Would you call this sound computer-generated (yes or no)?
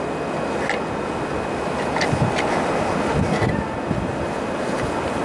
no